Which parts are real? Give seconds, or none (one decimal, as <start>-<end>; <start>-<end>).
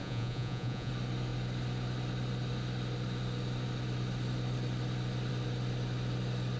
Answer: 0.9-6.6